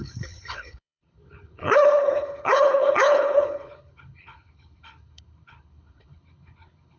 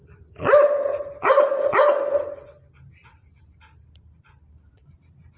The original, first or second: second